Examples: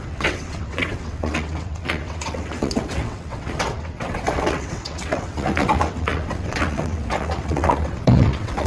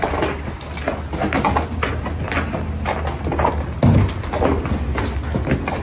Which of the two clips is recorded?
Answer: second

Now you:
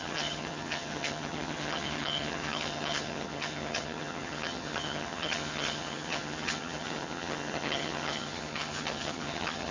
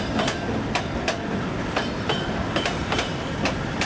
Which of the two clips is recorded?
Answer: second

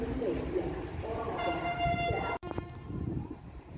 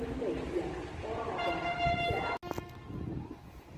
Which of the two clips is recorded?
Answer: second